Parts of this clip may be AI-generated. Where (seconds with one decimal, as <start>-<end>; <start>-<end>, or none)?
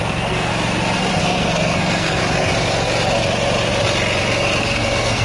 0.0-0.5; 1.2-2.2; 4.6-5.2